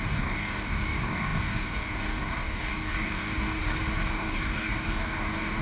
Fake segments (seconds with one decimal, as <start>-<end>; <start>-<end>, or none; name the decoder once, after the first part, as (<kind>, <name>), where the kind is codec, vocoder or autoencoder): 0.0-3.6 (codec, DAC); 4.1-5.6